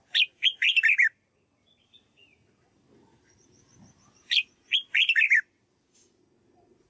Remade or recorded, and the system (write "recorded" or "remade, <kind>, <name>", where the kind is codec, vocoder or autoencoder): recorded